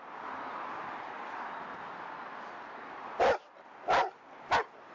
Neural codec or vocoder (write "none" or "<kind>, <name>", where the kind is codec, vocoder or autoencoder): none